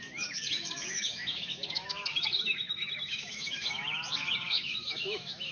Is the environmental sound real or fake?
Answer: fake